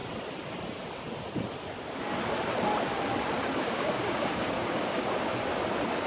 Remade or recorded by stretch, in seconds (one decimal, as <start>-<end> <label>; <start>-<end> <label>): 0.0-3.5 recorded; 3.5-5.3 remade; 5.3-6.1 recorded